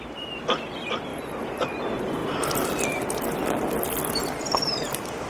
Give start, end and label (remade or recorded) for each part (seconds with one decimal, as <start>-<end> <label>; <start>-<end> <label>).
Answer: 0.0-1.1 recorded; 1.1-1.8 remade; 1.8-2.2 recorded; 2.2-5.3 remade